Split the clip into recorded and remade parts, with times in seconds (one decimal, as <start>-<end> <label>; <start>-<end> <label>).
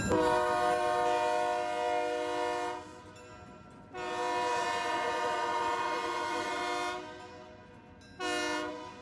0.0-4.5 recorded; 4.5-6.6 remade; 6.6-9.0 recorded